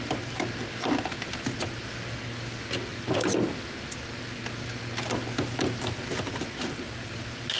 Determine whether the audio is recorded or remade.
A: recorded